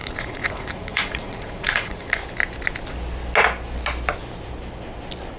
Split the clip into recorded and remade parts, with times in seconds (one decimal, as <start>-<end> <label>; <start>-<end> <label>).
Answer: 0.0-2.2 remade; 2.2-5.4 recorded